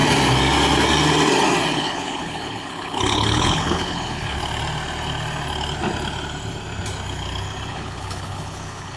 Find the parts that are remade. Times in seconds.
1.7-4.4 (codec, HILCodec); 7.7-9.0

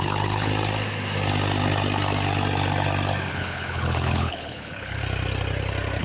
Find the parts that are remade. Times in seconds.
0.0-0.5 (codec, HILCodec); 3.3-5.0

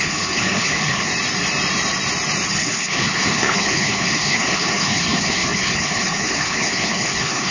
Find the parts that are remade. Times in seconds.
0.0-1.1 (codec, HILCodec); 2.5-7.5

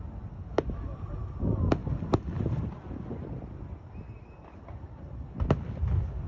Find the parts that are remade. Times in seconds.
none